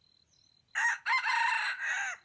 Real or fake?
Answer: real